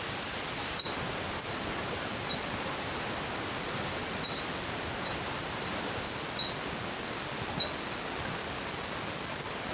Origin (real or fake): real